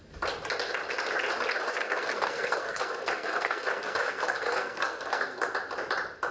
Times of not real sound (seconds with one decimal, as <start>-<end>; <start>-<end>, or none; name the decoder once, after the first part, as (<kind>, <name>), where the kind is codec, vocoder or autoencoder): 1.7-5.5 (codec, SNAC)